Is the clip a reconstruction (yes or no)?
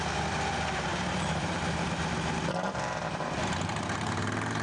yes